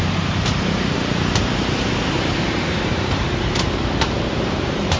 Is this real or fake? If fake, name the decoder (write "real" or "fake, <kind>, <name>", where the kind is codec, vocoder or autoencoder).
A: fake, vocoder, BigVGAN v2